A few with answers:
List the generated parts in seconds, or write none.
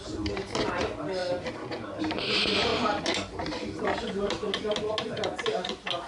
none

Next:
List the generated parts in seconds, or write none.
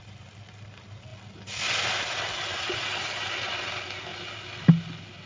none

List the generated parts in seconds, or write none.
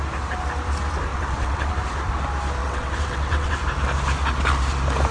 1.1-1.7 (vocoder, WaveNeXt); 2.6-3.6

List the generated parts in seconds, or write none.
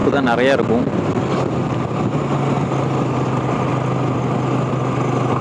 none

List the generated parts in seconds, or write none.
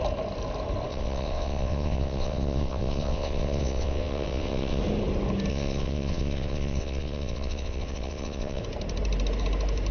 0.9-4.8 (vocoder, WaveNeXt); 5.5-8.6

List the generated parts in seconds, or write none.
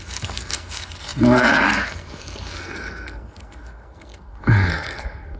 0.0-5.4 (codec, SNAC)